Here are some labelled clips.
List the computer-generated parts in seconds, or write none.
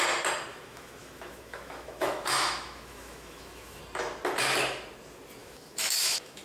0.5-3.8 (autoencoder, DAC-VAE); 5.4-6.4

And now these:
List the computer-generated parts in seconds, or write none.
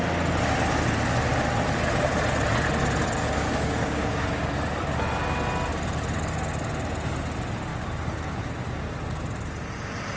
3.2-4.5 (codec, DAC)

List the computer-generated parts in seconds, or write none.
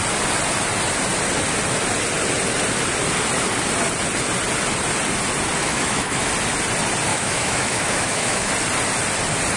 5.6-6.3 (autoencoder, DAC-VAE); 7.1-8.5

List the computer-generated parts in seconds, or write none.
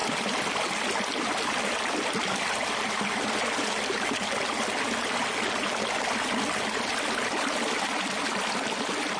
none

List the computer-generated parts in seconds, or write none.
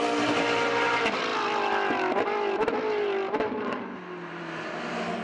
none